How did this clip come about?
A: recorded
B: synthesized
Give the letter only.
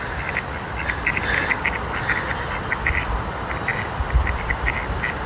A